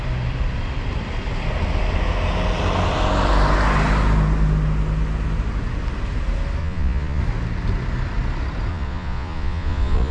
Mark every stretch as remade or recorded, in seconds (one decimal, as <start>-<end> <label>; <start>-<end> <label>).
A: 0.0-6.6 recorded; 6.6-7.2 remade; 7.2-8.7 recorded; 8.7-10.1 remade